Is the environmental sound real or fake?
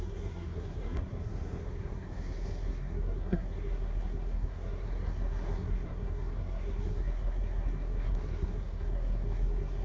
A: fake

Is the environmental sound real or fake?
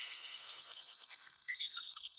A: fake